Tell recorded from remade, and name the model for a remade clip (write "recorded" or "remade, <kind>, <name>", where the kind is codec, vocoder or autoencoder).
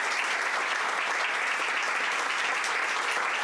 recorded